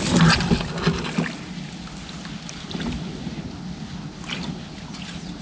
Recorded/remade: recorded